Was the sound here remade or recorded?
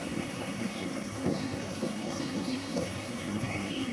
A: remade